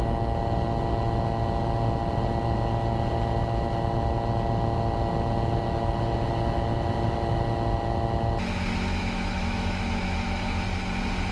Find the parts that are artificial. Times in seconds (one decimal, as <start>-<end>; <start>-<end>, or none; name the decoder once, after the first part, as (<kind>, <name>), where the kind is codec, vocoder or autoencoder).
8.9-10.6 (autoencoder, DAC-VAE)

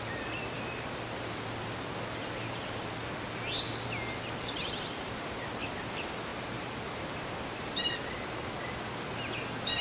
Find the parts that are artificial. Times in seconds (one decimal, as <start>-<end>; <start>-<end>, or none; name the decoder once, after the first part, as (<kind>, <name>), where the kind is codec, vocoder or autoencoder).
6.3-7.8 (vocoder, BigVGAN v2)

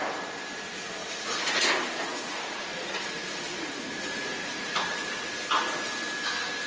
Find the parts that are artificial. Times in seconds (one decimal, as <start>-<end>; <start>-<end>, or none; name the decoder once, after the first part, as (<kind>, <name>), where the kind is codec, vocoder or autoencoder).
1.0-1.7 (vocoder, Vocos); 2.1-5.3

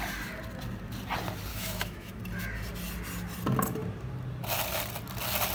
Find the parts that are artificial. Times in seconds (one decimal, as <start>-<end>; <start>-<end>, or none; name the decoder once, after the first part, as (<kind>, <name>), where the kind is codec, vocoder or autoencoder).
1.5-2.2 (autoencoder, DAC-VAE)